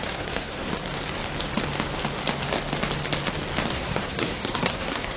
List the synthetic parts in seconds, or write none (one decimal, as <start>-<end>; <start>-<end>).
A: 0.0-0.7; 3.7-5.2